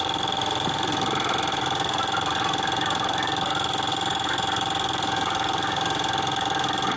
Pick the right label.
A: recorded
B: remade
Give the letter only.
B